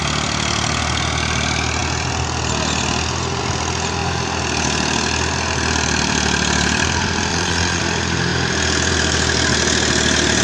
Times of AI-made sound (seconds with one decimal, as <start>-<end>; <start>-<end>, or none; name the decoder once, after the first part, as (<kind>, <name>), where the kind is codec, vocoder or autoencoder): 7.3-7.8 (vocoder, Vocos)

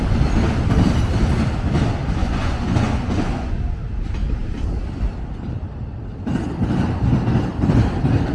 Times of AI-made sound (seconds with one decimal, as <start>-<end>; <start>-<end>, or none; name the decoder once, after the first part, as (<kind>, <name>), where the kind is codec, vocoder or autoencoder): 2.2-3.6 (vocoder, Vocos)

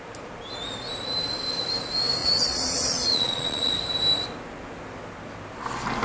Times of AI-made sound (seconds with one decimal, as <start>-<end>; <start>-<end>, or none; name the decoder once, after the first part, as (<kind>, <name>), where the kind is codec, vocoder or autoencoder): 2.2-3.7 (vocoder, Vocos)

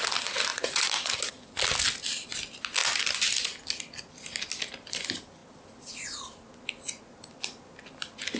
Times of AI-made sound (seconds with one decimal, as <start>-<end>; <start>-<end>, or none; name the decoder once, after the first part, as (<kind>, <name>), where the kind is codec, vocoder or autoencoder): 0.5-1.1 (vocoder, Vocos)

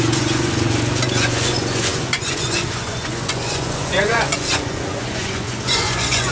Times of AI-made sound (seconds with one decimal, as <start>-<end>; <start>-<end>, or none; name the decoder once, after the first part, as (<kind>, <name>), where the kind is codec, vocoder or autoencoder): 0.0-6.3 (vocoder, Vocos)

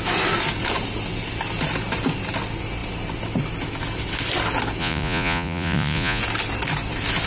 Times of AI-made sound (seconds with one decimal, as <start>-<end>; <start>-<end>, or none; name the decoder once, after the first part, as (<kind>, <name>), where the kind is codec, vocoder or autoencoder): 4.8-6.2 (vocoder, Vocos)

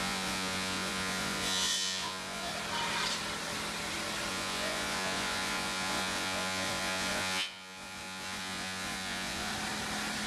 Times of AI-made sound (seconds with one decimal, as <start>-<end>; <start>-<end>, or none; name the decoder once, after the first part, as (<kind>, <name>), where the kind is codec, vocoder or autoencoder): 0.0-2.5 (vocoder, Vocos); 4.3-9.5